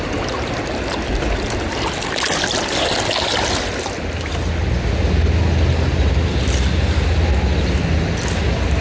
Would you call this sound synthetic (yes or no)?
no